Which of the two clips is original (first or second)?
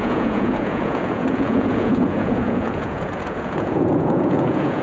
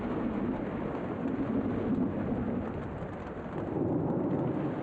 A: second